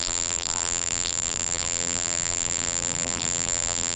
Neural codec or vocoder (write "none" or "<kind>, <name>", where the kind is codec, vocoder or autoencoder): vocoder, BigVGAN v2